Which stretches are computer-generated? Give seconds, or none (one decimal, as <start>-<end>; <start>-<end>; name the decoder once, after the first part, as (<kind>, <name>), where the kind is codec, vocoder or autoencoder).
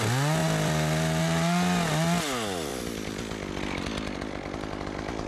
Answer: 0.4-1.2 (vocoder, BigVGAN v2)